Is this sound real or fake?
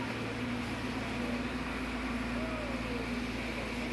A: real